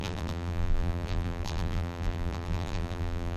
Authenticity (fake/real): fake